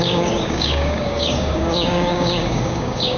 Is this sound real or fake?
fake